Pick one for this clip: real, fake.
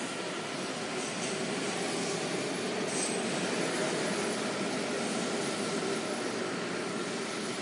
real